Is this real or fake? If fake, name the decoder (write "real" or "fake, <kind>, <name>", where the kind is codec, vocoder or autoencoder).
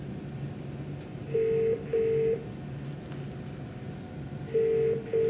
real